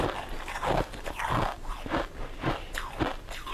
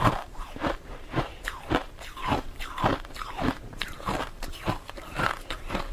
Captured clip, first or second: first